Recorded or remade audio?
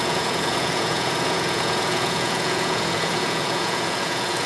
remade